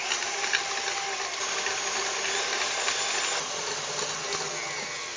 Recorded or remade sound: recorded